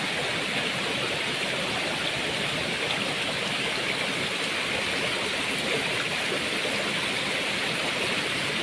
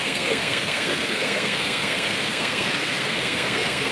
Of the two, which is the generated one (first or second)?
second